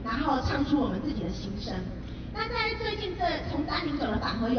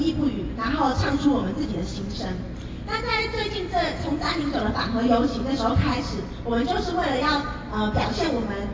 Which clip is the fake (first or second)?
first